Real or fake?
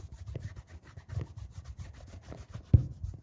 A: real